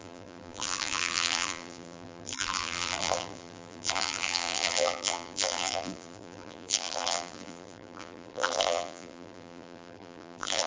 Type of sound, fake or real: fake